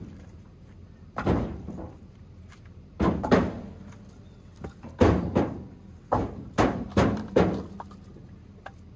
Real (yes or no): yes